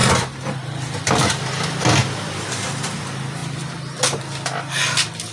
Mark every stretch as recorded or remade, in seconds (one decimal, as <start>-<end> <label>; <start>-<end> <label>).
0.0-1.4 remade; 1.4-2.0 recorded; 2.0-3.0 remade; 3.0-5.3 recorded